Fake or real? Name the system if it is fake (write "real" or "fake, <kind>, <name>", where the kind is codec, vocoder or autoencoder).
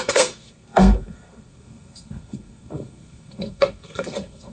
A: fake, codec, SNAC